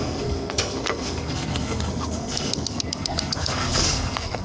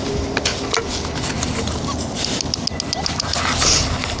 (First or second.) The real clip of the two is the second